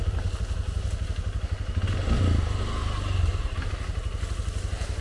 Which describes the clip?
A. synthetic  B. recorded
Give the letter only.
B